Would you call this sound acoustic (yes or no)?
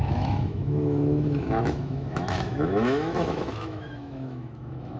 no